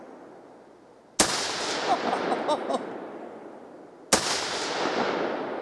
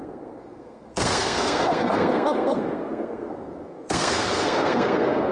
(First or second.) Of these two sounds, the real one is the first